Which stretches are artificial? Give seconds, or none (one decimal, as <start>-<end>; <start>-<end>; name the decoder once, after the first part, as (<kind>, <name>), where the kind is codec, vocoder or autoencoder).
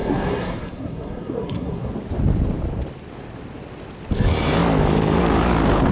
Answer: 0.0-1.9 (codec, SNAC)